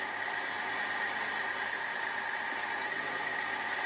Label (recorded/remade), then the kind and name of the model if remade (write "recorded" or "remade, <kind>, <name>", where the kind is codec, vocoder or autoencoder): recorded